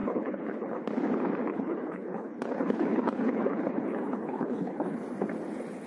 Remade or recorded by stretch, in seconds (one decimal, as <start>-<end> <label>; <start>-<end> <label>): 0.0-0.8 remade; 0.8-1.5 recorded; 1.5-5.0 remade; 5.0-5.9 recorded